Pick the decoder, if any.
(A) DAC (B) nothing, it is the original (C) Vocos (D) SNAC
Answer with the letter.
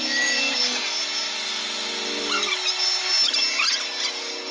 B